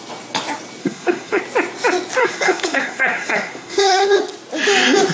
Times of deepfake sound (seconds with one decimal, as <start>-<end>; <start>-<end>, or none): 0.8-1.4; 2.2-4.2